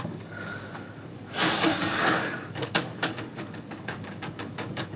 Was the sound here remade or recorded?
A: remade